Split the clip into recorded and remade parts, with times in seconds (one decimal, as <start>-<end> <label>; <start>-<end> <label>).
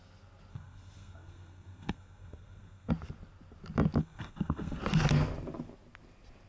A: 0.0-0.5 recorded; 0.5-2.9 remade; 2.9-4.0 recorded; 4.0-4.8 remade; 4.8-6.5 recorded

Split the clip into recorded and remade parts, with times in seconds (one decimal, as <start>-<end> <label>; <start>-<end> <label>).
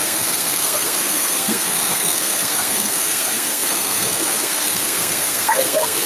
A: 0.0-6.1 remade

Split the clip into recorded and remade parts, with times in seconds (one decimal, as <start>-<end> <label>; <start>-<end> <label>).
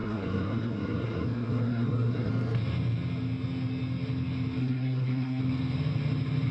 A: 0.0-2.3 remade; 2.3-4.6 recorded; 4.6-5.4 remade; 5.4-6.5 recorded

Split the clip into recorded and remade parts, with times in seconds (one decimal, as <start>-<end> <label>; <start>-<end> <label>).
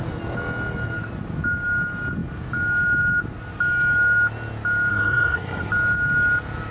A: 0.0-4.9 recorded; 4.9-5.7 remade; 5.7-6.7 recorded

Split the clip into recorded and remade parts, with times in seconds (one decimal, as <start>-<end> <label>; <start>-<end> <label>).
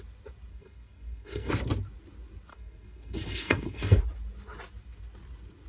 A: 0.0-0.5 recorded; 0.5-1.5 remade; 1.5-2.5 recorded; 2.5-4.0 remade; 4.0-5.7 recorded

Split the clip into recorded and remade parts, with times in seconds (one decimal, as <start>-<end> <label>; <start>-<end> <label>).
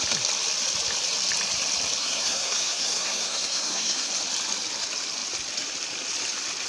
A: 0.0-2.0 recorded; 2.0-4.1 remade; 4.1-6.7 recorded